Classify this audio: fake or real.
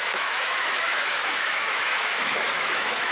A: fake